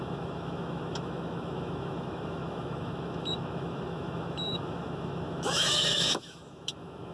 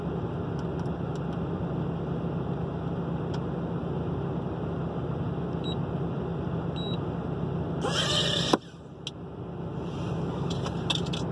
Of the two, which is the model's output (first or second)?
first